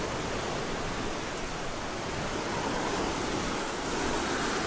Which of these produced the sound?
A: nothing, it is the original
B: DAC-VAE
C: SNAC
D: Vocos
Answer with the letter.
A